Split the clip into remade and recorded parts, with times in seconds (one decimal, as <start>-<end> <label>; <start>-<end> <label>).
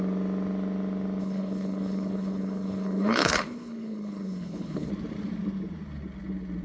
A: 0.0-1.2 recorded; 1.2-4.9 remade; 4.9-6.6 recorded